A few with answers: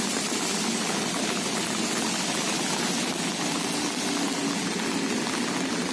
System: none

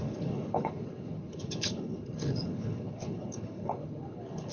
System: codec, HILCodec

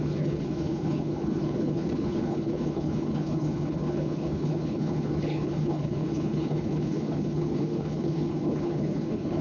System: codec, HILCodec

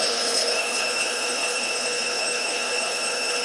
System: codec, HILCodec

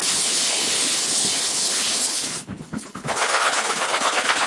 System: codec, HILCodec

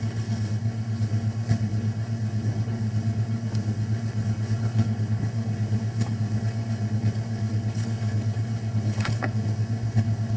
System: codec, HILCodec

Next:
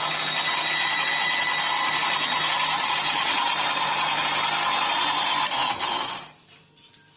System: none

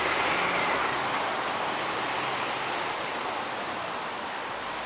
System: none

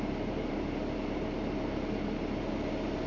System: none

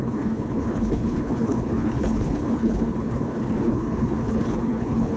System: codec, HILCodec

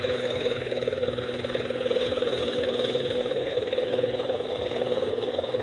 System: codec, HILCodec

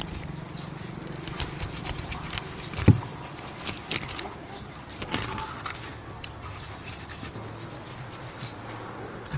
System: none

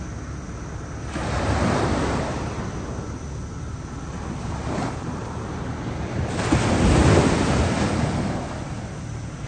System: none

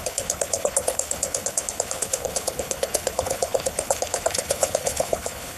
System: codec, HILCodec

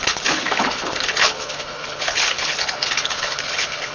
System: codec, HILCodec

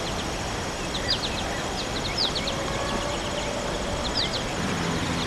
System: none